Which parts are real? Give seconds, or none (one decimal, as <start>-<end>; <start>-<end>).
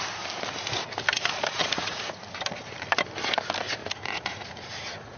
0.0-1.6; 2.2-3.8